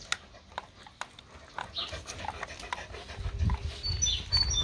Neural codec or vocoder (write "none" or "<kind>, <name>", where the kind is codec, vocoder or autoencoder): none